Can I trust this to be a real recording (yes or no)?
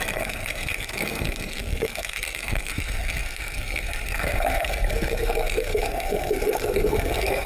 no